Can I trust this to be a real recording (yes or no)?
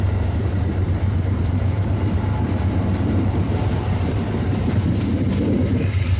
no